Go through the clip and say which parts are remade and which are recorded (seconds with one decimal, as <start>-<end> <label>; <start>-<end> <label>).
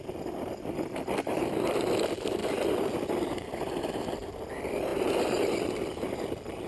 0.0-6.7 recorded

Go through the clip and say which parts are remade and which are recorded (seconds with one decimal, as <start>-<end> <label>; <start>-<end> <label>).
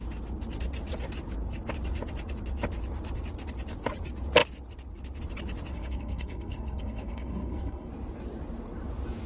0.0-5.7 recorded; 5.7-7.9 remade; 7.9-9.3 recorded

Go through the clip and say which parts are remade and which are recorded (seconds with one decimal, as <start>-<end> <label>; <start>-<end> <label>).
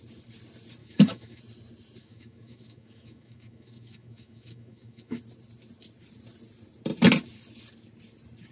0.0-0.8 recorded; 0.8-1.4 remade; 1.4-2.0 recorded; 2.0-5.2 remade; 5.2-8.5 recorded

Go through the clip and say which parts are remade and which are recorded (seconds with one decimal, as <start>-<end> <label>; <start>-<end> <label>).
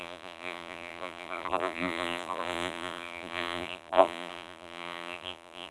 0.0-5.7 remade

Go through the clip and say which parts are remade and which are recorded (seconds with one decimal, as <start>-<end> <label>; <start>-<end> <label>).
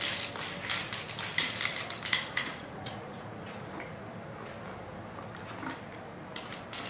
0.0-2.1 recorded; 2.1-4.1 remade; 4.1-6.9 recorded